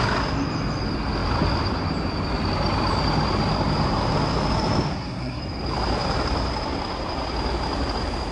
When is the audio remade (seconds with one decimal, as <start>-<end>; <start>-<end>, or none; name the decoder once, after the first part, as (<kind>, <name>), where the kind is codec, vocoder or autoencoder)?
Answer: 4.9-5.4 (codec, SNAC)